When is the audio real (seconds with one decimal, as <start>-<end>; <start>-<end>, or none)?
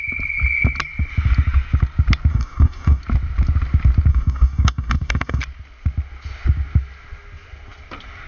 0.0-2.3; 3.0-4.1; 5.4-8.3